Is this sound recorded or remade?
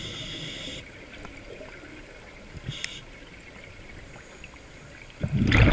recorded